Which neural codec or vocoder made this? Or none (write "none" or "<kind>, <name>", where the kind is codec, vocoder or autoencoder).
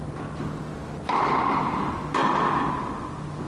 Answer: none